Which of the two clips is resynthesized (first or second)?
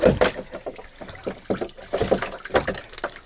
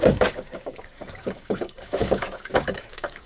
second